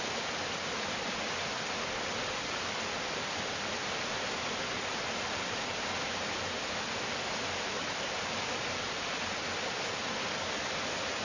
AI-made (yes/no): no